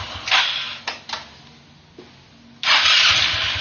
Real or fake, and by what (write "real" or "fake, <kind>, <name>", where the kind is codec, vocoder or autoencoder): real